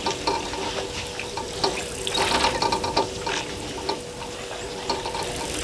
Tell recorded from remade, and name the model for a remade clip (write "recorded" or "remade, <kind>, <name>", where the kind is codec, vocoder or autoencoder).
recorded